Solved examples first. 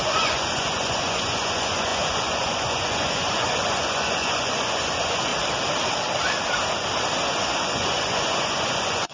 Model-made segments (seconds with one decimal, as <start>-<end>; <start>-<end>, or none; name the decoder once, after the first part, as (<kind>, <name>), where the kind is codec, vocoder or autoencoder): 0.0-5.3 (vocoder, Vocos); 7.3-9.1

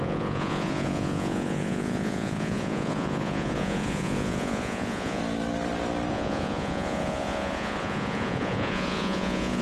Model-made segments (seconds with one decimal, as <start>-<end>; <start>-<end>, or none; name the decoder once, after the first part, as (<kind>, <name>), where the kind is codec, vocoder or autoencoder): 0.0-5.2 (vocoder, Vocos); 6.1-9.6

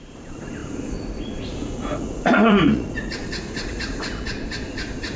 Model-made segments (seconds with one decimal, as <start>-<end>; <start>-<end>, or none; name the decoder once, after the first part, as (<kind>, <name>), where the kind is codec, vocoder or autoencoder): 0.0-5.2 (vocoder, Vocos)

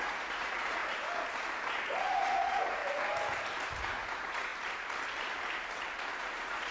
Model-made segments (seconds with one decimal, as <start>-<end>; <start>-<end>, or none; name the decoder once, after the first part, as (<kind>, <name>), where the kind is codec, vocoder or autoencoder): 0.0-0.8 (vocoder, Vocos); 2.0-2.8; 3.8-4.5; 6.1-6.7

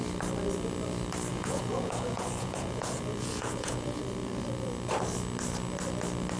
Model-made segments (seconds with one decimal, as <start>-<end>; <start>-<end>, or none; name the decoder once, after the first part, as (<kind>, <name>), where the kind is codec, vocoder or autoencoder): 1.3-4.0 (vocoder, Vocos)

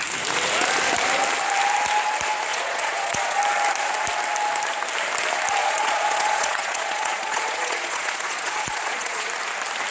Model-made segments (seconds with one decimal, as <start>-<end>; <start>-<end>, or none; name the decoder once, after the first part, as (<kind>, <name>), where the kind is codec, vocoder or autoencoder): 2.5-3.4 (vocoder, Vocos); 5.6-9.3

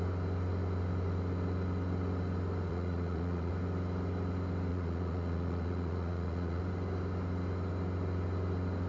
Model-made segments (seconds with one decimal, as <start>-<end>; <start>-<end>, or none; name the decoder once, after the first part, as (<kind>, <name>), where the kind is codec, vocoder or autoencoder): 2.7-3.5 (vocoder, Vocos); 4.7-6.6

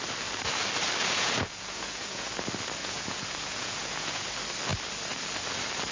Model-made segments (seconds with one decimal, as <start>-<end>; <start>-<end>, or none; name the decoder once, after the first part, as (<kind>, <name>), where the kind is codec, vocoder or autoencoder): 1.0-2.3 (vocoder, Vocos); 2.8-4.3